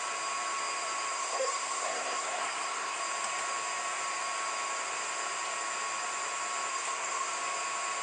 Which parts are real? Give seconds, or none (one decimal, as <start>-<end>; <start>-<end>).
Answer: 0.0-1.1; 3.0-6.7; 7.3-8.0